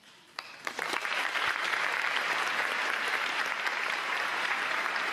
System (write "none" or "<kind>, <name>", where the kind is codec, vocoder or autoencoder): vocoder, BigVGAN v2